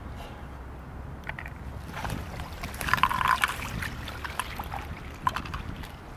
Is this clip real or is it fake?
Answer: real